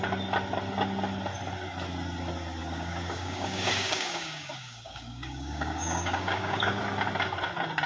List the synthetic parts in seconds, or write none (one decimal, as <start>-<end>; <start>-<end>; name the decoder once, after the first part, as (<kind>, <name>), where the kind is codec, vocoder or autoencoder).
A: 2.6-6.8 (codec, DAC)